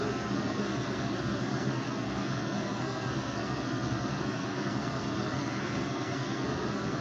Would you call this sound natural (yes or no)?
no